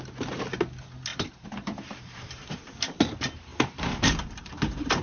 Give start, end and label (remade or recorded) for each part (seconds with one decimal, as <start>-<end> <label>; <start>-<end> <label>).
0.0-1.1 recorded; 1.1-2.6 remade; 2.6-3.5 recorded; 3.5-5.0 remade